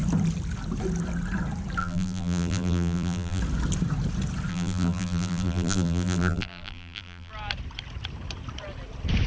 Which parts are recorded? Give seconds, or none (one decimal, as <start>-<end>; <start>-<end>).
0.0-1.8; 3.4-4.5; 7.3-9.3